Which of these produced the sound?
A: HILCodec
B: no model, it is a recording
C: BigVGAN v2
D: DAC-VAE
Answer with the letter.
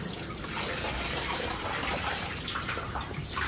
C